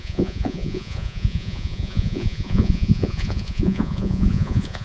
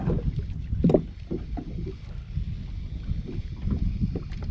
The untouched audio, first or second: second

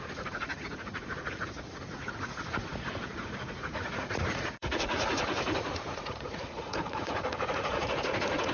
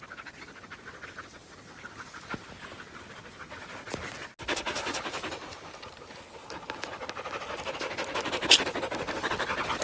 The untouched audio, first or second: second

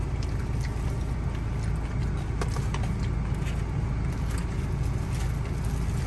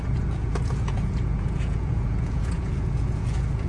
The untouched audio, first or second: first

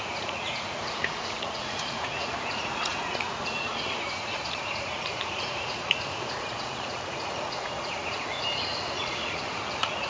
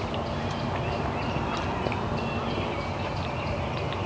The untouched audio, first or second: second